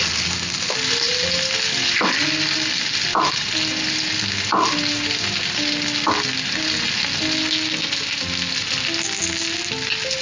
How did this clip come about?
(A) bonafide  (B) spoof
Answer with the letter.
A